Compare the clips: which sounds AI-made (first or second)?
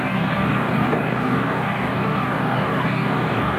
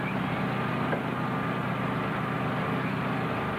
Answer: first